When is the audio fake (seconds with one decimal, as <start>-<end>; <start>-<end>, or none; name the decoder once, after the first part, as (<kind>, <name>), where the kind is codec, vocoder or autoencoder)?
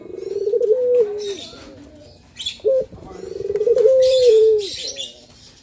0.0-5.6 (vocoder, BigVGAN v2)